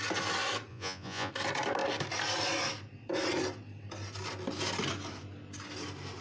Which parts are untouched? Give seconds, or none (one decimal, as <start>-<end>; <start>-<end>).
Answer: 0.0-0.7; 1.3-6.2